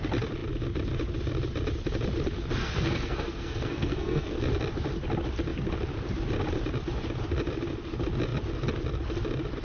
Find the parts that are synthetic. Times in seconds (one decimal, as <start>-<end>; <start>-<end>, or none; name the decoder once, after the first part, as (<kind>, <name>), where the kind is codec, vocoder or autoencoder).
2.6-4.4 (codec, SNAC)